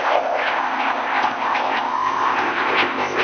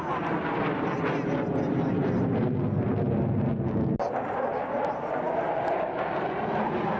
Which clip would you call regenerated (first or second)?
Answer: first